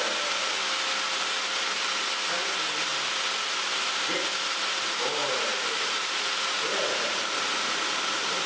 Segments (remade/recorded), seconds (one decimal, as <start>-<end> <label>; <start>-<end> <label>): 0.0-8.5 recorded